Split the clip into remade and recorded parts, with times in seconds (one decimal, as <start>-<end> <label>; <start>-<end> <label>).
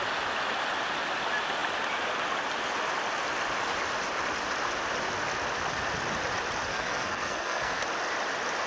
0.0-6.7 recorded; 6.7-7.8 remade; 7.8-8.7 recorded